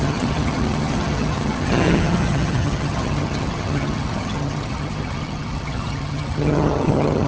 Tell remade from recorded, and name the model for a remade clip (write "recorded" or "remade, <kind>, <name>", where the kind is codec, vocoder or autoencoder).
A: remade, vocoder, HiFi-GAN